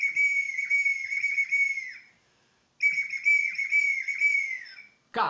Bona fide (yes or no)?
yes